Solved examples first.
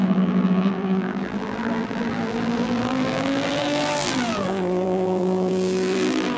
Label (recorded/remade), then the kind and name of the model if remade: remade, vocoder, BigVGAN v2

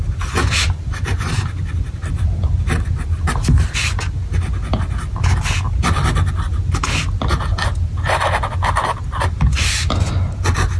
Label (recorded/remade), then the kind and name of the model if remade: recorded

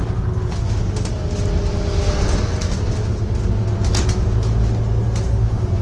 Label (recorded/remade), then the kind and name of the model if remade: recorded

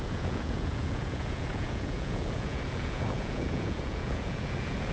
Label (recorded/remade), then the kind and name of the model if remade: remade, vocoder, Vocos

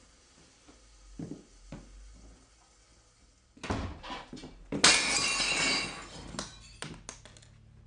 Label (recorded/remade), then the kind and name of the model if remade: recorded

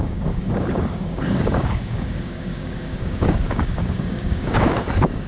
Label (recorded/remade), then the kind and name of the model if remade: remade, codec, DAC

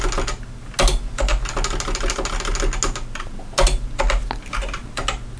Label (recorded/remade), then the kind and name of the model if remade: recorded